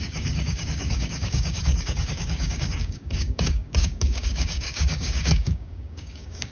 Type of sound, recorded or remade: remade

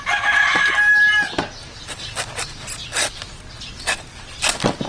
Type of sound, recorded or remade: recorded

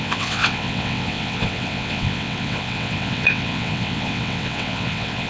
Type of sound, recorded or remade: remade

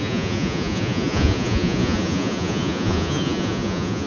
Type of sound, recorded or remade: remade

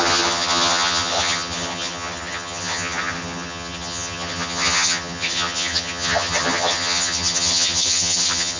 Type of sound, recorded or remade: remade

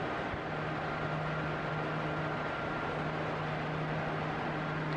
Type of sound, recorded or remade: recorded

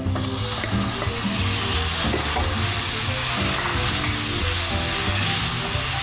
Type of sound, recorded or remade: recorded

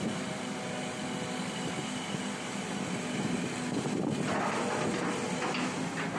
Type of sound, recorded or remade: recorded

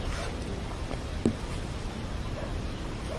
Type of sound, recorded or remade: remade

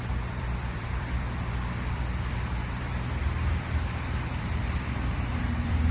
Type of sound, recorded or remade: remade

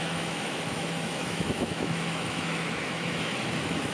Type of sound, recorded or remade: remade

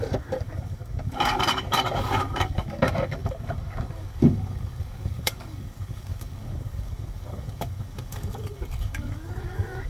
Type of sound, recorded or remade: remade